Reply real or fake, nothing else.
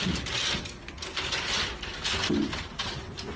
real